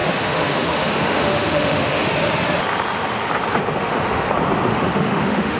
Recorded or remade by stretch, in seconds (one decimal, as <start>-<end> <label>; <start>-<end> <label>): 0.0-2.1 remade; 2.1-3.8 recorded; 3.8-4.3 remade; 4.3-4.7 recorded; 4.7-5.6 remade